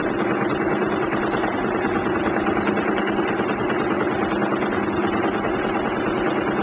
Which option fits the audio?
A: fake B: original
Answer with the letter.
B